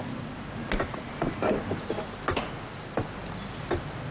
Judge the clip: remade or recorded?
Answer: recorded